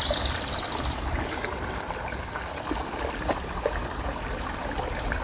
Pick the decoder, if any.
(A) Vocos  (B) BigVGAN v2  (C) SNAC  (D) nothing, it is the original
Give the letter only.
D